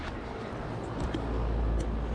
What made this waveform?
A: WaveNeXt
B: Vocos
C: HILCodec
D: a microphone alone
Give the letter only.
D